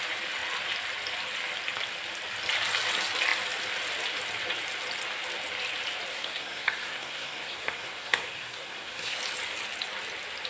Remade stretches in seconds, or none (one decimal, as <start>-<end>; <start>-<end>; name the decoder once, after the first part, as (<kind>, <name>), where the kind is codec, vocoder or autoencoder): 6.1-9.2 (codec, SNAC)